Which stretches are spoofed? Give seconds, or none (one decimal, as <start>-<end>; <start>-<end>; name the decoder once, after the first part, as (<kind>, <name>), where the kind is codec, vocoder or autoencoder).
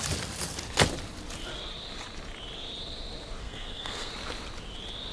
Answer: 3.4-4.1 (codec, SNAC)